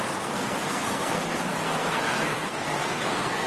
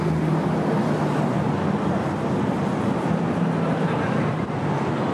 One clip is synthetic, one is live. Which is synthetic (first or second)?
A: first